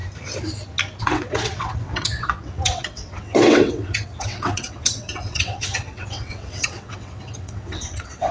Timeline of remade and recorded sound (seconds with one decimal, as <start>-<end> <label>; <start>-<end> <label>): 0.0-1.0 recorded; 1.0-8.3 remade